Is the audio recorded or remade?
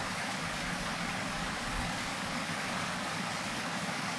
remade